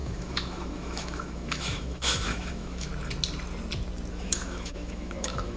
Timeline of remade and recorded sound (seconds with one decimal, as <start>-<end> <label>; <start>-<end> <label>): 0.0-2.9 remade; 2.9-4.1 recorded; 4.1-5.6 remade